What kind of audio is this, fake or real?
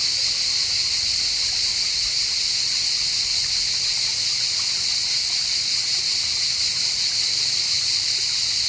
real